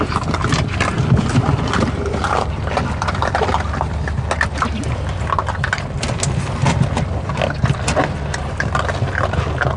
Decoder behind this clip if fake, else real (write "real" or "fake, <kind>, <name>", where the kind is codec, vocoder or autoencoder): real